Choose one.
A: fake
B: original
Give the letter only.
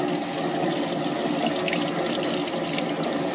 B